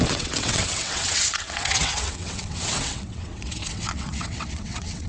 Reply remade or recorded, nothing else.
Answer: remade